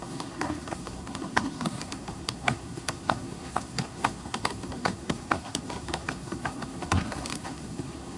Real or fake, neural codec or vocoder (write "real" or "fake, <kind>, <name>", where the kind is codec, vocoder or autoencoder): fake, codec, SNAC